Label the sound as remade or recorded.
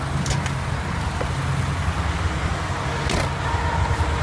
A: recorded